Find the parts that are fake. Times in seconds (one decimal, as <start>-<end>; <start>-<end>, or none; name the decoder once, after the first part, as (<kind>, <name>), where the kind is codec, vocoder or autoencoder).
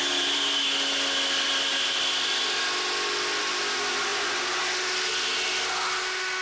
none